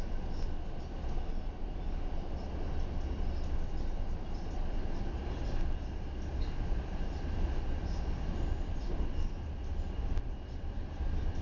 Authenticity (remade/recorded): recorded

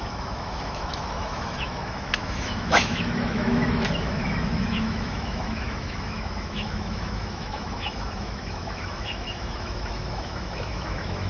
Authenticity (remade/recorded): remade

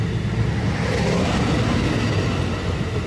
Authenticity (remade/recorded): recorded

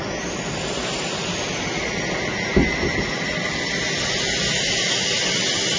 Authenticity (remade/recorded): recorded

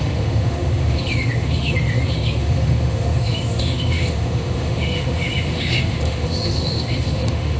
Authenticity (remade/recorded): remade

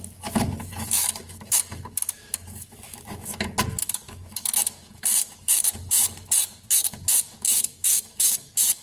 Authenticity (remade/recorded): remade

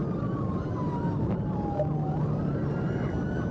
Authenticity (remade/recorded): recorded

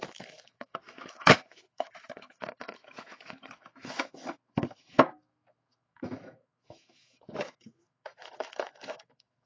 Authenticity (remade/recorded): remade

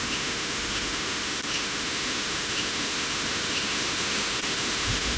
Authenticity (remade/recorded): remade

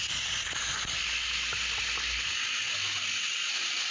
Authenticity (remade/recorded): recorded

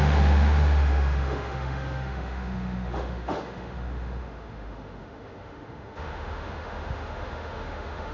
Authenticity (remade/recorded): remade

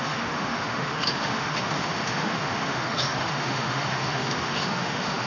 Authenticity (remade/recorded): remade